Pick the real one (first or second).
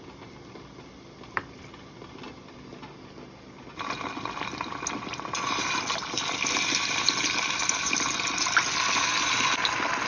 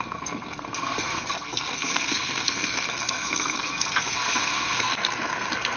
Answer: first